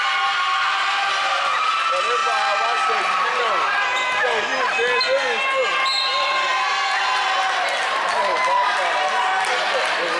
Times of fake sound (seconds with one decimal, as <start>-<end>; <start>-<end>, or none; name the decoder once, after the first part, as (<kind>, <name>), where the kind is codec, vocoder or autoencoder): none